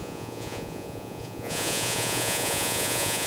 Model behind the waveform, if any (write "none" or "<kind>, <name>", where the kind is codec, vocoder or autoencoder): vocoder, Vocos